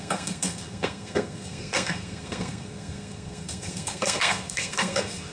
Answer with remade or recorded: remade